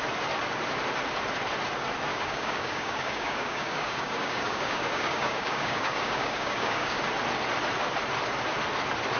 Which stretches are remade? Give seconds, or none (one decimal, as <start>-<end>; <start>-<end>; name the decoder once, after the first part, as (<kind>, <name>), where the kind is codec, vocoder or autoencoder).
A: 2.1-7.0 (codec, DAC)